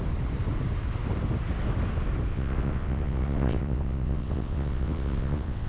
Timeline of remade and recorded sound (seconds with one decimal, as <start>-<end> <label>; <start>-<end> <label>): 0.0-2.3 recorded; 2.3-5.7 remade